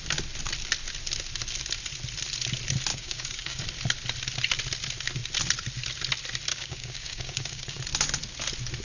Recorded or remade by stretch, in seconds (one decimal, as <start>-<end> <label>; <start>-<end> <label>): 0.0-2.9 recorded; 2.9-3.6 remade; 3.6-6.5 recorded; 6.5-7.8 remade; 7.8-8.8 recorded